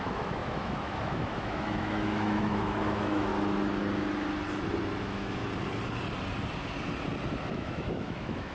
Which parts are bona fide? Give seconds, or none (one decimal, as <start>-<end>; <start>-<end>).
3.3-5.0; 5.4-7.5